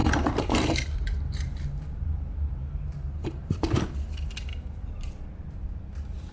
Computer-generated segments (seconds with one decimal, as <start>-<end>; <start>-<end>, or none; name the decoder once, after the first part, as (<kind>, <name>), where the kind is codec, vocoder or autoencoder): 0.0-3.8 (vocoder, BigVGAN v2); 4.5-5.1

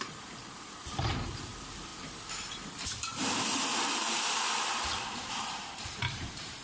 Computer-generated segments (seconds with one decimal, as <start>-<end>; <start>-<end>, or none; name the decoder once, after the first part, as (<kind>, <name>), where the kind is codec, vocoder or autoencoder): 0.0-6.6 (vocoder, BigVGAN v2)

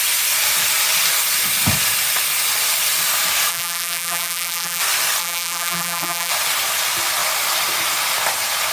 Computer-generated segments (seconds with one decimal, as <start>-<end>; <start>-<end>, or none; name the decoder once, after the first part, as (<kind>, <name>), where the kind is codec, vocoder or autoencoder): 3.5-4.8 (vocoder, BigVGAN v2); 5.2-6.3

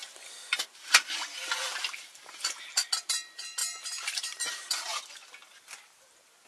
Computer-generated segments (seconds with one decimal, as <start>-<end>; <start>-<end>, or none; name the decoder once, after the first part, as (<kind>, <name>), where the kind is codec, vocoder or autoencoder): 0.0-0.6 (vocoder, BigVGAN v2); 1.7-3.1; 3.6-5.0

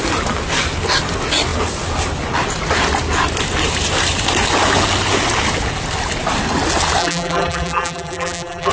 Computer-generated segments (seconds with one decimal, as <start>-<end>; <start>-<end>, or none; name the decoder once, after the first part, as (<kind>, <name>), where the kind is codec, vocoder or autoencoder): 7.0-8.7 (vocoder, BigVGAN v2)